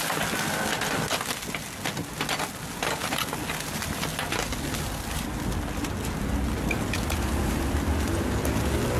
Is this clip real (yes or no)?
yes